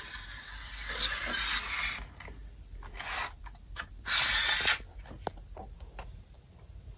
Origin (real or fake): real